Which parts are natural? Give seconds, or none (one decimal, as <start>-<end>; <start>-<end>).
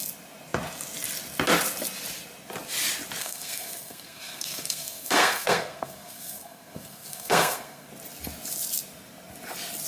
0.0-3.2; 7.9-9.9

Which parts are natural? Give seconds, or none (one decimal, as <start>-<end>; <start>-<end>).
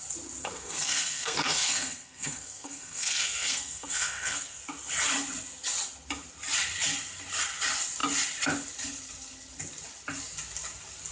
0.0-0.4; 4.6-11.1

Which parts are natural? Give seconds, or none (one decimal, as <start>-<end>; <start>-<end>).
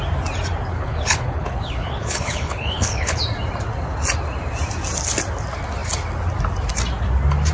0.0-0.7; 3.2-7.5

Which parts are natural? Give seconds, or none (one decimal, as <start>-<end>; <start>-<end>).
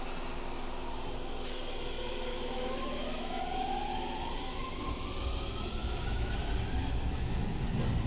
0.0-2.3; 3.4-5.8; 6.3-6.8; 7.6-8.1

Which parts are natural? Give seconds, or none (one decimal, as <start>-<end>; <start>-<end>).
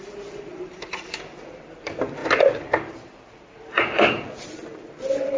none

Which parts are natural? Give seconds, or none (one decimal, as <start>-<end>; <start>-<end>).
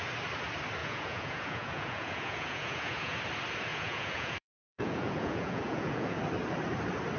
0.0-0.8; 3.2-3.7; 6.2-7.2